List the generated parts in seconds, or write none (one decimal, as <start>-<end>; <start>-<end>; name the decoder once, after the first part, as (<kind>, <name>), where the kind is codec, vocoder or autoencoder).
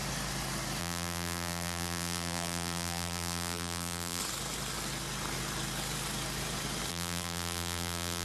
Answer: 0.8-4.2 (vocoder, BigVGAN v2); 6.9-8.2